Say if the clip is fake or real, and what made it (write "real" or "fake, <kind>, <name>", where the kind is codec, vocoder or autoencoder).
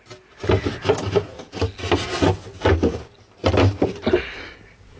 real